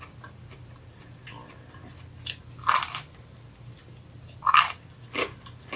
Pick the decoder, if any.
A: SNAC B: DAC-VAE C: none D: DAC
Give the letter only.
C